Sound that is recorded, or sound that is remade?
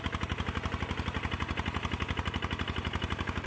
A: recorded